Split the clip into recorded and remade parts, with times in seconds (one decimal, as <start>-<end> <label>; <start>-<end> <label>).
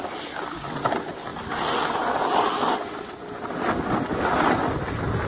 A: 0.0-5.3 recorded